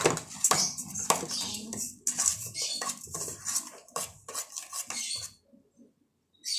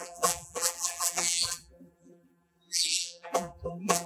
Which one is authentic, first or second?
first